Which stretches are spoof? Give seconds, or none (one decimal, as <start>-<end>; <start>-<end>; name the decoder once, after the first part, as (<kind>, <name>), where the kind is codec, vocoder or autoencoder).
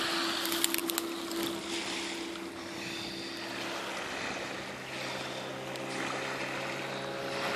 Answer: none